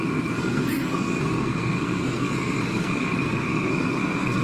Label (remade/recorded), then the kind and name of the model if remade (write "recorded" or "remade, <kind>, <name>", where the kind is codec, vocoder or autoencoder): remade, codec, SNAC